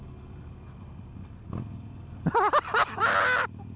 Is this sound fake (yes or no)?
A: no